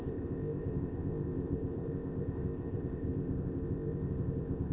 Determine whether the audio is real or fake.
fake